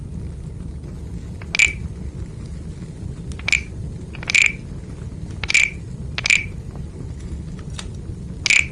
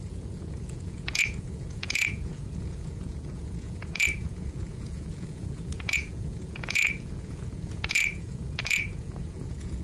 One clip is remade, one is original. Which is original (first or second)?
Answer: first